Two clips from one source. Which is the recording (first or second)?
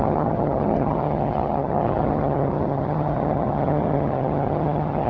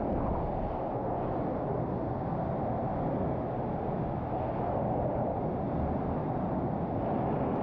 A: second